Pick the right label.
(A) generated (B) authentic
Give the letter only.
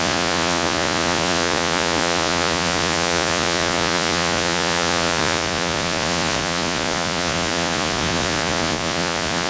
A